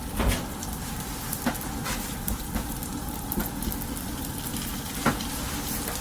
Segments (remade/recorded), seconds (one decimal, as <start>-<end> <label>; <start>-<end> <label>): 0.0-1.4 remade; 1.4-6.0 recorded